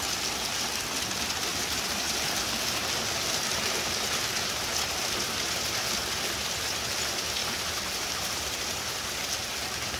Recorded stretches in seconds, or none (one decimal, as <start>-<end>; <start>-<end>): 0.0-1.5; 2.5-7.4; 9.2-10.0